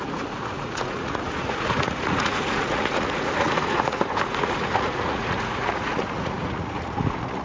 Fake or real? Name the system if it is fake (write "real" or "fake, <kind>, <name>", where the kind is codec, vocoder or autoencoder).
fake, vocoder, Vocos